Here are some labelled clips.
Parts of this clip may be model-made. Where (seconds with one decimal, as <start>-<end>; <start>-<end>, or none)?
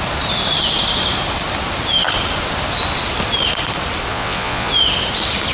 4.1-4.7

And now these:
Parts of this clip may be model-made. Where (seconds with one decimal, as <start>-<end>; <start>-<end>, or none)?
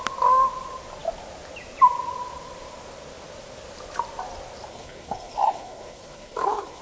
4.7-6.8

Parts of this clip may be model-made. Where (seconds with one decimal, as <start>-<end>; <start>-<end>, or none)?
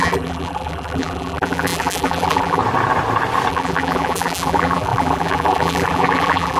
0.0-2.6; 3.5-6.6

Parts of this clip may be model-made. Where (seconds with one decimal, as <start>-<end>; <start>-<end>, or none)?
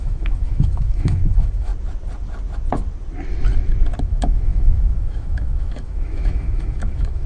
0.0-1.7; 4.0-7.3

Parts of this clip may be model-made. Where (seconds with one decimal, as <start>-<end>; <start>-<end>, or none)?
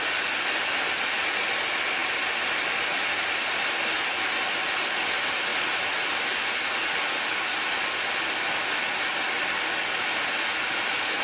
none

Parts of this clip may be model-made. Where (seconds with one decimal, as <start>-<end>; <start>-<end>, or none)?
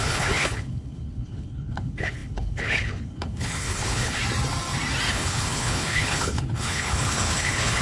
0.0-4.2; 5.1-7.8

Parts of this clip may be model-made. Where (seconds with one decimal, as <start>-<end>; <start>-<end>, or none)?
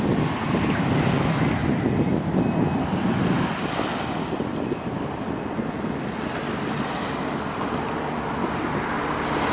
none